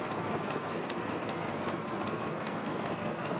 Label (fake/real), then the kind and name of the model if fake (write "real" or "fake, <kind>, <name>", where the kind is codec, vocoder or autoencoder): fake, codec, SNAC